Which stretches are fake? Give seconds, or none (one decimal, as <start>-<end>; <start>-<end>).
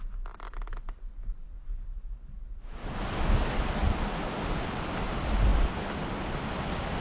none